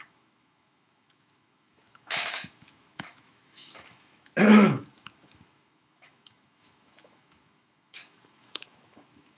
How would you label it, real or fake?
fake